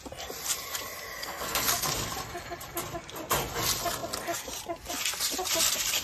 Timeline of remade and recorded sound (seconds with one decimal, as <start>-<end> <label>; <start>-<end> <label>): 0.0-1.2 recorded; 1.2-1.9 remade; 1.9-6.0 recorded